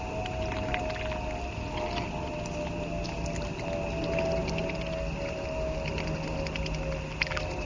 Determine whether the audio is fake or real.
real